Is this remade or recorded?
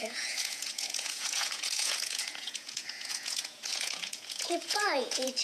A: remade